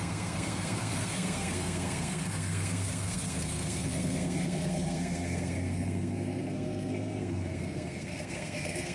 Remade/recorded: remade